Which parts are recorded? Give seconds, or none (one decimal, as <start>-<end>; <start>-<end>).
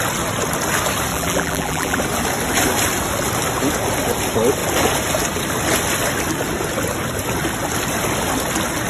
0.0-1.1; 2.0-8.9